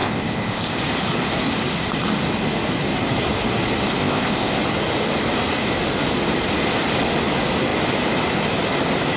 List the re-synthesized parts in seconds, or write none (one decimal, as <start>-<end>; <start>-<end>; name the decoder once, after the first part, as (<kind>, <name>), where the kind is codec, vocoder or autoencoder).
0.0-0.8 (codec, ZipCodec); 4.0-4.6